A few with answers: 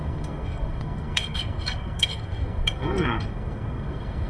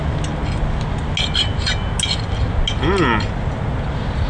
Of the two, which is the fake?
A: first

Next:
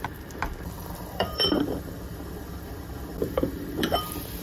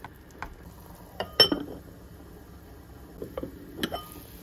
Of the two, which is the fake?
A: first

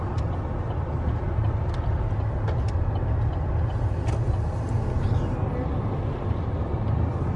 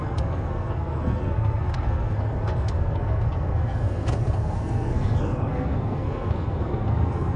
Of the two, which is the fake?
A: second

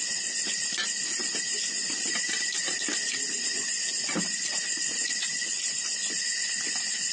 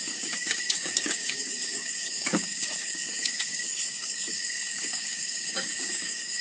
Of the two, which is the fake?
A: second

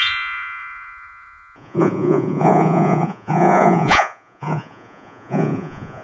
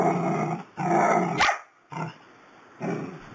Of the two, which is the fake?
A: first